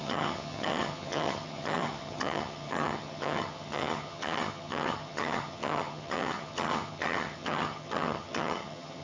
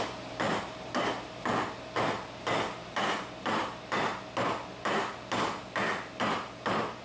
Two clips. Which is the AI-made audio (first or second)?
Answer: first